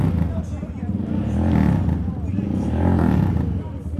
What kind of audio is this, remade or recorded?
recorded